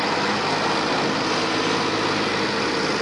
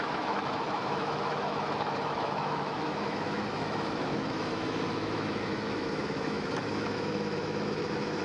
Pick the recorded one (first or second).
first